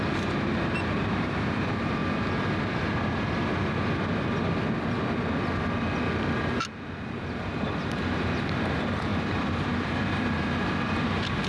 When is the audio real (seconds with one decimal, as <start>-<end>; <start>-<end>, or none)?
2.0-6.8